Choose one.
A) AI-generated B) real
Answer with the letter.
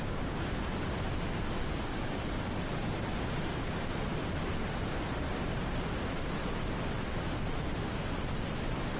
B